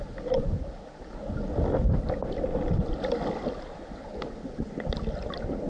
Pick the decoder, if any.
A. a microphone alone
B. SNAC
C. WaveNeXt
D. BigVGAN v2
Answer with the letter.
A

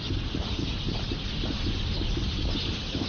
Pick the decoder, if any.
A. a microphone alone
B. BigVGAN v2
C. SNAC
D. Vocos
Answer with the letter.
A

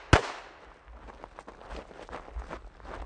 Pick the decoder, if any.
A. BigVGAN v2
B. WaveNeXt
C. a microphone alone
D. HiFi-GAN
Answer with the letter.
C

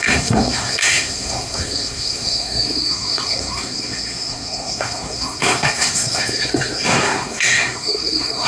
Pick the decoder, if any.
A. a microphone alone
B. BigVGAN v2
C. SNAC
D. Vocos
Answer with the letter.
C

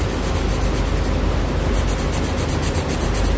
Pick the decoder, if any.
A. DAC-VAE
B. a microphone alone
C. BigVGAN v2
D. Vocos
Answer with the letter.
B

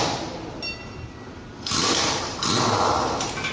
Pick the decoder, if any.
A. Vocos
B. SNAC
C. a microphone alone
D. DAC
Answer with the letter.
C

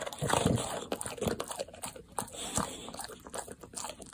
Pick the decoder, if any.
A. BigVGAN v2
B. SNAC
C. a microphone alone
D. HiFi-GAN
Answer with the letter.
C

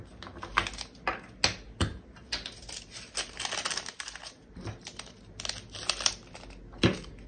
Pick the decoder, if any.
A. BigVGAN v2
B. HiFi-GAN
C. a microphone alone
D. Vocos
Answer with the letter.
C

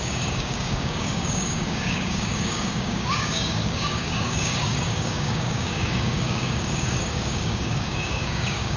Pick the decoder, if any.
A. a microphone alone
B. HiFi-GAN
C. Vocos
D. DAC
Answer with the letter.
D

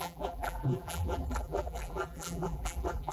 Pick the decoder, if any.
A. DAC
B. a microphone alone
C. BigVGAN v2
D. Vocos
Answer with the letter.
C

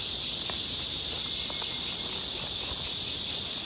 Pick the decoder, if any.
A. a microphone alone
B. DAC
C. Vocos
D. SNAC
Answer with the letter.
A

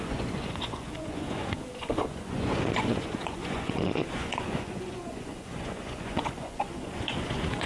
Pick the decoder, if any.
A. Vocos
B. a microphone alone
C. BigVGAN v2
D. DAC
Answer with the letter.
A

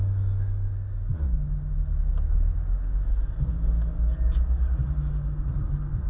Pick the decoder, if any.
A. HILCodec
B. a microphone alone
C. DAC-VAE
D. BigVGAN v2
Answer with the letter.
B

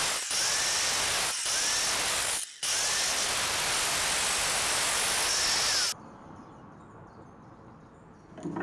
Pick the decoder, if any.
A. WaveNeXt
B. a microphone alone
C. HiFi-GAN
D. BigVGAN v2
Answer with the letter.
B